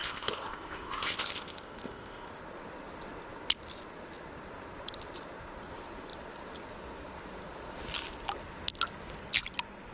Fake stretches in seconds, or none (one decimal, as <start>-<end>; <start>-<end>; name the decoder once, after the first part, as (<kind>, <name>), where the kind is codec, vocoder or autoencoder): 0.0-2.3 (codec, ZipCodec)